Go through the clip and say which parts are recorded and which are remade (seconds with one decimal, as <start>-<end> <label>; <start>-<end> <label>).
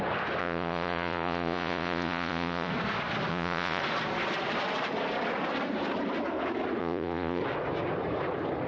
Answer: 0.0-0.4 recorded; 0.4-2.7 remade; 2.7-3.3 recorded; 3.3-3.8 remade; 3.8-6.8 recorded; 6.8-7.4 remade; 7.4-8.7 recorded